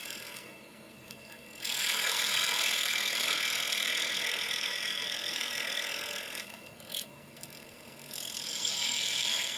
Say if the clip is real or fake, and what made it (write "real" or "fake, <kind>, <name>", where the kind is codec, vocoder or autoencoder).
fake, codec, SNAC